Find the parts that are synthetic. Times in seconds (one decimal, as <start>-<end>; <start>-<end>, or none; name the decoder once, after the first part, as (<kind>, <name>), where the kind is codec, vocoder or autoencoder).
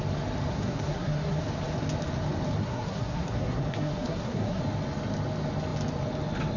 0.5-1.4 (codec, SNAC); 2.6-4.6